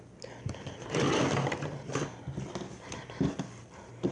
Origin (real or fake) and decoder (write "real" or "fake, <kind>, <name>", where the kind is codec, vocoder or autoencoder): real